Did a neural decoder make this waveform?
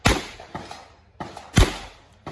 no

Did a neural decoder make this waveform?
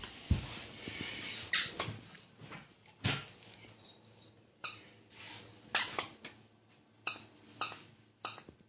no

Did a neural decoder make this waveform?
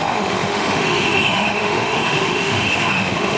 yes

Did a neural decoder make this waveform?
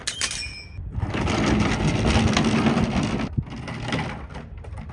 no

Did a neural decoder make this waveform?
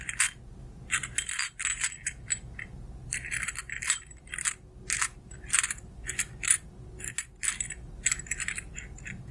no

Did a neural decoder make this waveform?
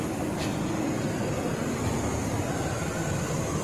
no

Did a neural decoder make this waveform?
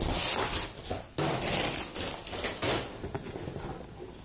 no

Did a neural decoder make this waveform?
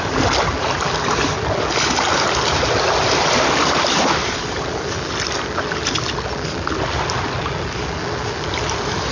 no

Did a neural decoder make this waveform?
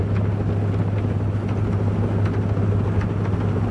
no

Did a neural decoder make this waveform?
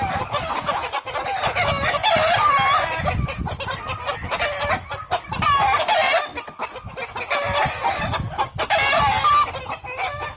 no